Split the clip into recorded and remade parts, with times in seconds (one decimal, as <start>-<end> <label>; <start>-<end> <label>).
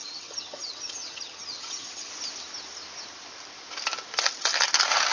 0.0-2.1 remade; 2.1-5.1 recorded